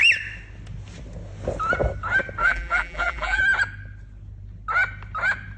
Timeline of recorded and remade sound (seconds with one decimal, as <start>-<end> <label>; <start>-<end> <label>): 0.0-2.4 recorded; 2.4-3.4 remade; 3.4-5.6 recorded